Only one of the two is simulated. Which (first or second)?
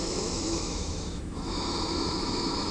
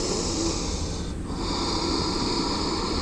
first